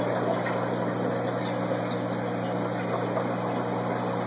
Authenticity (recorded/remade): recorded